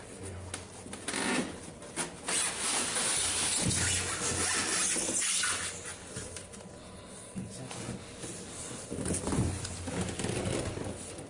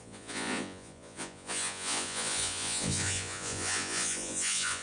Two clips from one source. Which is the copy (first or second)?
second